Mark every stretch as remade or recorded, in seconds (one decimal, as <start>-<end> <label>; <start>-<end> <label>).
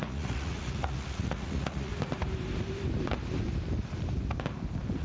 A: 0.0-1.9 remade; 1.9-5.0 recorded